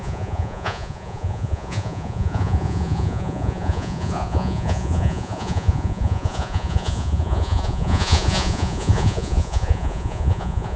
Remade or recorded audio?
remade